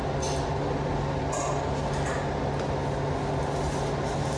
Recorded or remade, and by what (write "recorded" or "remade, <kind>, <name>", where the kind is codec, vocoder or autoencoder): recorded